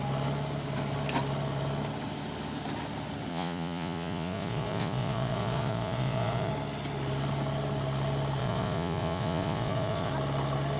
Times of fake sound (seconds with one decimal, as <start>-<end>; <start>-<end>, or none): 3.3-6.5; 8.4-10.1